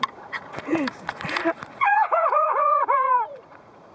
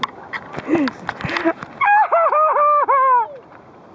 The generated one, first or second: first